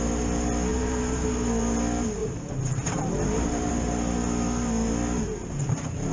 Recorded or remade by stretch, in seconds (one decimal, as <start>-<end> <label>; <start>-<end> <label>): 0.0-0.7 recorded; 0.7-1.3 remade; 1.3-2.2 recorded; 2.2-3.7 remade; 3.7-5.4 recorded; 5.4-6.1 remade